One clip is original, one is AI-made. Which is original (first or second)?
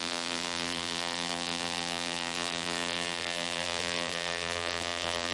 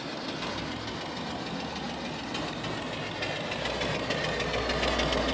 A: second